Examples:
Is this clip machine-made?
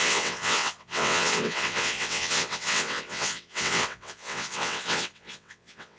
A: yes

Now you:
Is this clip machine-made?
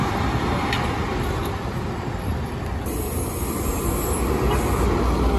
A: no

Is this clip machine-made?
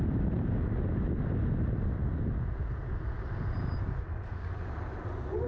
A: no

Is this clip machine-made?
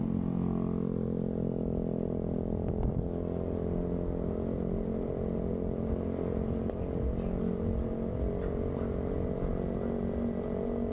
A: no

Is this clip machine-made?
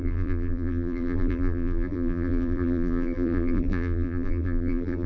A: yes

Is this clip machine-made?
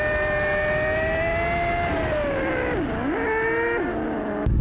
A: no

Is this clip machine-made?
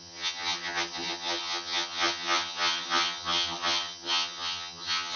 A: yes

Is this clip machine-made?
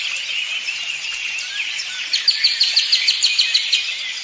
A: no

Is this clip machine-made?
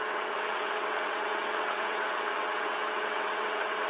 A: yes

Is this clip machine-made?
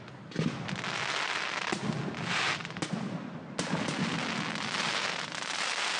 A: no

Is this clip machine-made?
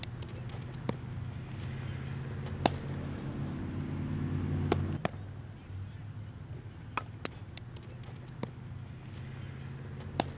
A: no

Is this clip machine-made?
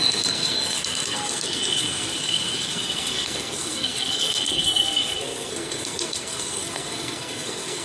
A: yes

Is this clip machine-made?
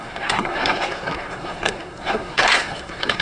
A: yes